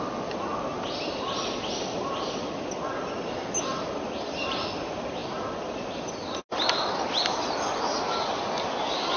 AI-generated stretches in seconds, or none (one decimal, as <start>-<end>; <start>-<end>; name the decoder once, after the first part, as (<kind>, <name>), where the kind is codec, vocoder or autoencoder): none